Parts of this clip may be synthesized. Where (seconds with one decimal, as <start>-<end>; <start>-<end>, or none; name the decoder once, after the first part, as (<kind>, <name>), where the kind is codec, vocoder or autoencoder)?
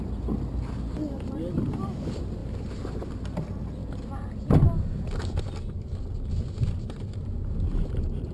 0.0-2.4 (vocoder, BigVGAN v2); 3.1-3.8; 5.4-8.3